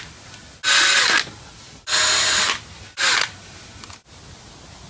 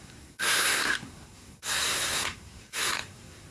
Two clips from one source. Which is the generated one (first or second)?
second